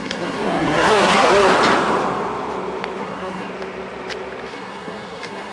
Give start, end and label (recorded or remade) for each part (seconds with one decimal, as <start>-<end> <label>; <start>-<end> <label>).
0.0-1.5 remade; 1.5-3.0 recorded; 3.0-3.5 remade; 3.5-4.5 recorded; 4.5-5.5 remade